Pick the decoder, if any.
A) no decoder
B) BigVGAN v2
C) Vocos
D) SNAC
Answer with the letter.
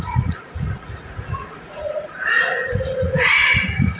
C